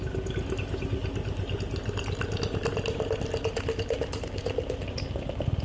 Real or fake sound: real